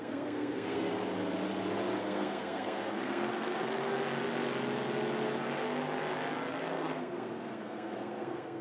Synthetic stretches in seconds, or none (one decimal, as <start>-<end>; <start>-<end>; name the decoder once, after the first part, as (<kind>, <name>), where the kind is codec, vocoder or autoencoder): 0.0-0.9 (codec, SNAC); 2.0-3.9; 6.6-8.6